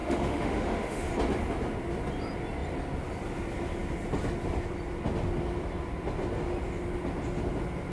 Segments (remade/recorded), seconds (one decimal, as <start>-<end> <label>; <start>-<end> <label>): 0.0-1.1 remade; 1.1-7.9 recorded